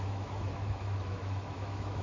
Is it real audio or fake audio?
fake